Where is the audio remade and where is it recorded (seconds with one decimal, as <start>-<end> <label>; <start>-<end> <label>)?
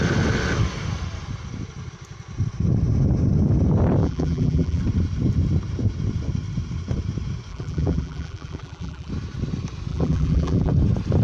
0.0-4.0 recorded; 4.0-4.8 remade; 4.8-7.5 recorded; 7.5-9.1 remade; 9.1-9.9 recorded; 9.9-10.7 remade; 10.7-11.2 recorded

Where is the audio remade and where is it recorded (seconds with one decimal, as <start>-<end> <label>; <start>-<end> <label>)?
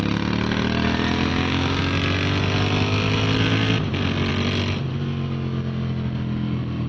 0.0-1.3 recorded; 1.3-1.8 remade; 1.8-6.9 recorded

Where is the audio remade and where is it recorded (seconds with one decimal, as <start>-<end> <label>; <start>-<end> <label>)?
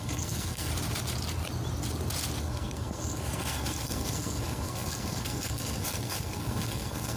0.0-0.7 remade; 0.7-2.4 recorded; 2.4-7.2 remade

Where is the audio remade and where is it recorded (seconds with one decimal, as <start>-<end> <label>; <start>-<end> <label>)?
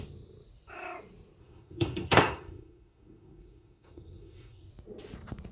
0.0-1.4 recorded; 1.4-4.7 remade; 4.7-5.5 recorded